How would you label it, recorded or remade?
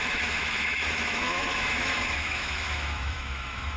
remade